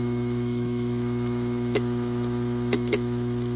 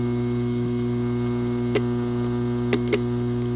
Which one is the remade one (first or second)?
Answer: first